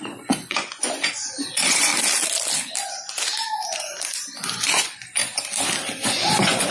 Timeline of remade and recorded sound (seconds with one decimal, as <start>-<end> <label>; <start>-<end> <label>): 0.0-1.9 remade; 1.9-4.5 recorded; 4.5-5.2 remade; 5.2-6.1 recorded; 6.1-6.7 remade